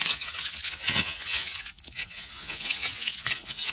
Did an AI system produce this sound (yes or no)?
yes